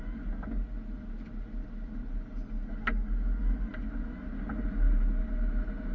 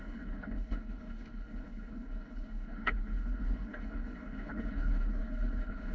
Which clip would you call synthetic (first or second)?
second